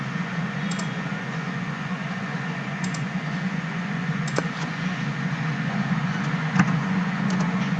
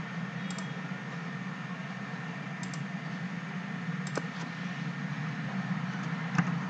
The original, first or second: second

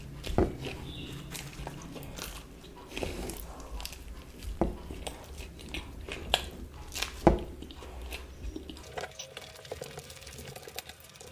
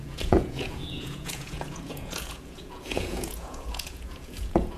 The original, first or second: first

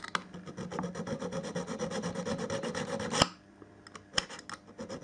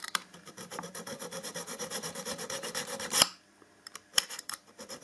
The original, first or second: first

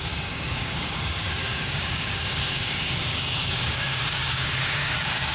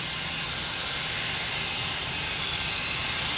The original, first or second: second